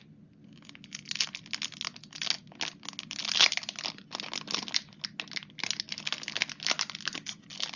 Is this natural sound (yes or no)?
yes